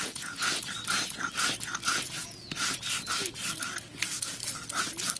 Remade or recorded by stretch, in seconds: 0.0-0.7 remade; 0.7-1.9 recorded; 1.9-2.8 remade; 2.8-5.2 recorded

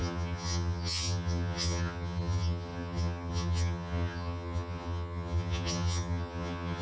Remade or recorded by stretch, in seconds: 0.0-6.8 remade

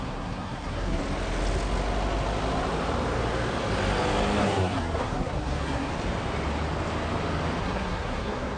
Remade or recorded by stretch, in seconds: 0.0-1.0 remade; 1.0-4.4 recorded; 4.4-5.9 remade; 5.9-7.6 recorded; 7.6-8.6 remade

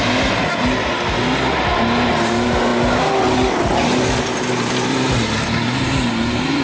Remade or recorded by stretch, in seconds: 0.0-6.6 recorded

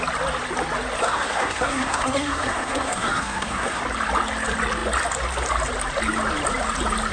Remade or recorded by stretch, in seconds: 0.0-1.0 recorded; 1.0-3.8 remade; 3.8-7.1 recorded

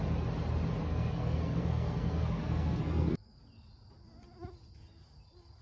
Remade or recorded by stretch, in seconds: 0.0-0.8 recorded; 0.8-3.4 remade; 3.4-5.6 recorded

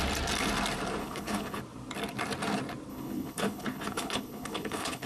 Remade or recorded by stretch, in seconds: 0.0-1.0 recorded; 1.0-1.6 remade; 1.6-2.9 recorded; 2.9-5.1 remade